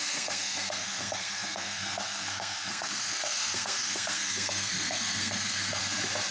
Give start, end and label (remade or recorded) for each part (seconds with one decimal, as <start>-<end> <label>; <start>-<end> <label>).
0.0-5.8 remade; 5.8-6.3 recorded